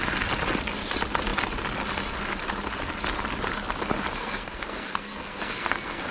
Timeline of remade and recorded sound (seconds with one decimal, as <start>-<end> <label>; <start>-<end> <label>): 0.0-4.2 recorded; 4.2-6.1 remade